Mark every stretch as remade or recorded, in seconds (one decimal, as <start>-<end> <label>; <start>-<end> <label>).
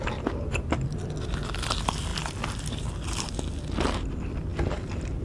0.0-5.2 recorded